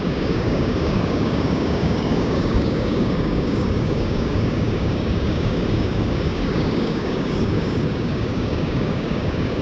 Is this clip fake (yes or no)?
yes